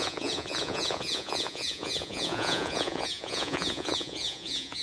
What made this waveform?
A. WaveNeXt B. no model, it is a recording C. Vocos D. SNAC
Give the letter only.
C